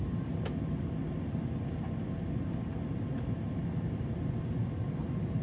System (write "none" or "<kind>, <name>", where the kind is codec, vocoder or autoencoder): none